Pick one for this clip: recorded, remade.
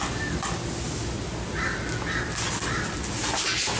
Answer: recorded